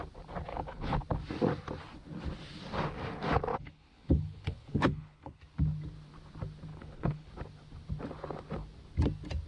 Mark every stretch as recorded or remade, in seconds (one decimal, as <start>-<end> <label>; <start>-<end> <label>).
0.0-0.5 recorded; 0.5-1.0 remade; 1.0-3.5 recorded; 3.5-5.4 remade; 5.4-6.7 recorded; 6.7-7.3 remade; 7.3-9.5 recorded